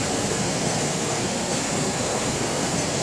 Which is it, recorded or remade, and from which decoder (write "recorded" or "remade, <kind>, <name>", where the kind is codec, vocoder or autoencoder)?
remade, codec, SNAC